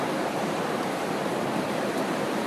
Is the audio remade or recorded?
remade